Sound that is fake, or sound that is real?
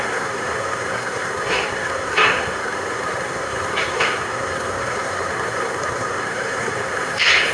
fake